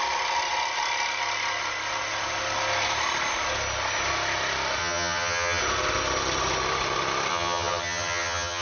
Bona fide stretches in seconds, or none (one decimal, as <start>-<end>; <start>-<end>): 0.0-4.8; 5.6-7.3